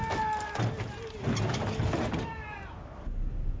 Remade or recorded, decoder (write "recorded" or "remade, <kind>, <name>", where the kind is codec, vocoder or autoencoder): recorded